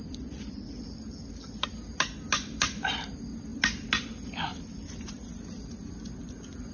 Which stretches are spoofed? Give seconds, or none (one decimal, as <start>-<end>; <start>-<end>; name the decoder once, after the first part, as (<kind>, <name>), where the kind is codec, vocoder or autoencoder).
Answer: none